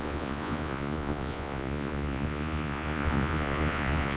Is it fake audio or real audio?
fake